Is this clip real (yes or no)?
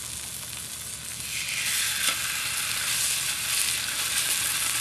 yes